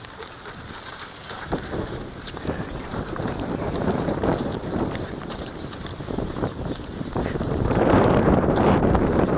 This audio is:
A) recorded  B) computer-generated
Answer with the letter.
B